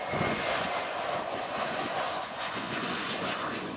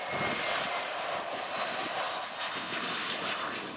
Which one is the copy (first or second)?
first